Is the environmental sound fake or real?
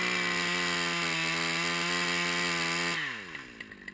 real